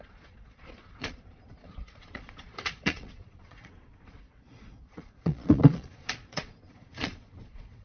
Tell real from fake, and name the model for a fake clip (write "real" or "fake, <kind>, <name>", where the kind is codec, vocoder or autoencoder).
fake, vocoder, Vocos